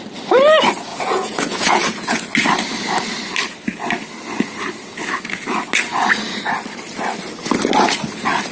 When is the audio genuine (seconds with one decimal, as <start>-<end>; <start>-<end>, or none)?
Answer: 0.0-0.9; 2.2-8.5